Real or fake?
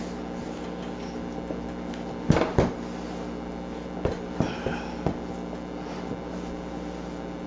real